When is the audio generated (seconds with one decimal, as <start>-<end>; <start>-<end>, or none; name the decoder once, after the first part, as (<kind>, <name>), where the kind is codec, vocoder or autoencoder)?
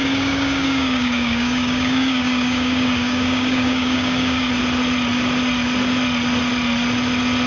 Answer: 0.0-4.5 (codec, DAC)